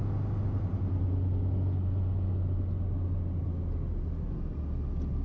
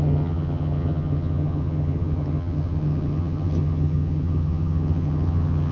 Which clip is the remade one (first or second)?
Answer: second